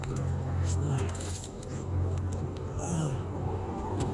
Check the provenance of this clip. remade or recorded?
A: remade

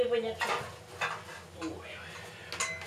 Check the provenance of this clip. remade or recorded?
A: recorded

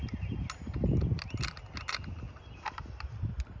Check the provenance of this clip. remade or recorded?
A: recorded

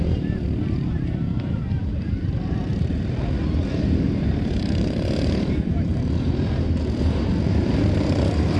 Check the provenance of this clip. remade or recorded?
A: remade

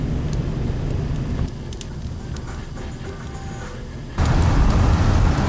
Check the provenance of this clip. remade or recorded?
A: recorded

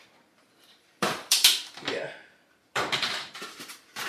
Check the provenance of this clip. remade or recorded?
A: remade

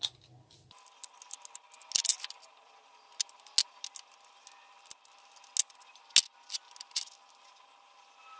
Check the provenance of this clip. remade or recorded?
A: recorded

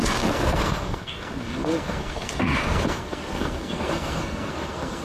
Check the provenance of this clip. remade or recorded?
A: remade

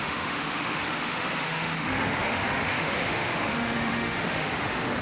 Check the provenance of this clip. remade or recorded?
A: remade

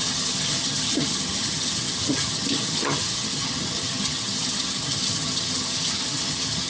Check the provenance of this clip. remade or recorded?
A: remade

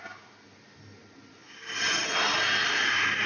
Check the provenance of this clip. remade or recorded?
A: recorded